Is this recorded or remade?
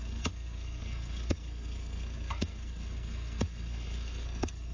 remade